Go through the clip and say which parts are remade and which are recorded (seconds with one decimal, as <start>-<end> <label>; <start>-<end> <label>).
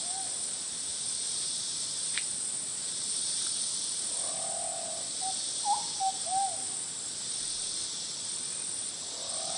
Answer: 0.0-9.6 recorded